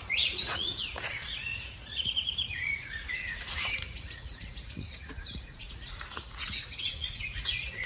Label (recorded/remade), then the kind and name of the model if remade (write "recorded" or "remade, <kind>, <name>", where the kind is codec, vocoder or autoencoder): remade, vocoder, Vocos